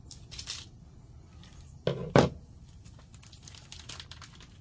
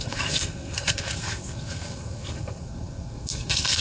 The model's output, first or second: second